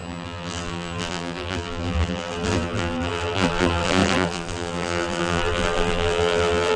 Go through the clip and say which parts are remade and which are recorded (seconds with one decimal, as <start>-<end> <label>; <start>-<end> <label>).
0.0-6.8 remade